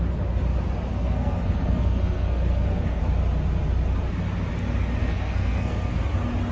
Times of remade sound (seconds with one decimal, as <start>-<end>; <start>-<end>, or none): 0.9-3.0; 5.0-6.0